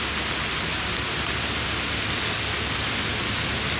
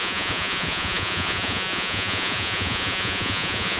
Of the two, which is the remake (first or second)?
second